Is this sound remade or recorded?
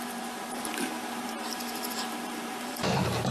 remade